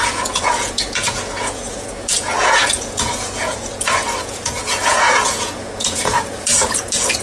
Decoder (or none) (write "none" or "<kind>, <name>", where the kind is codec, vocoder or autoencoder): vocoder, Vocos